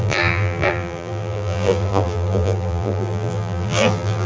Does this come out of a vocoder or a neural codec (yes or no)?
yes